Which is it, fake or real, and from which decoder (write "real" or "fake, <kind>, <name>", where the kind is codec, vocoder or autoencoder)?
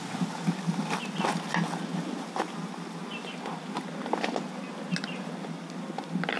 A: real